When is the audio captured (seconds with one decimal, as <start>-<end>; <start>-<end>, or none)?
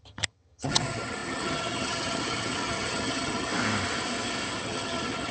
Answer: 3.5-4.6